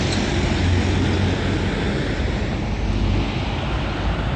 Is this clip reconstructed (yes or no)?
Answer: no